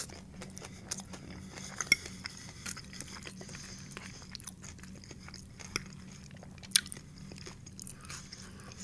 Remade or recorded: recorded